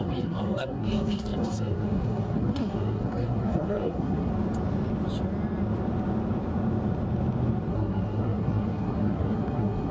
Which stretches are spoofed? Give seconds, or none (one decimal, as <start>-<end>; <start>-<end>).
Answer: 0.0-4.3; 7.7-9.9